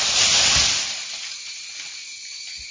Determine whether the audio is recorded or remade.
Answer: recorded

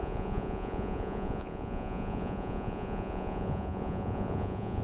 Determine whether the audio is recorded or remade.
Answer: remade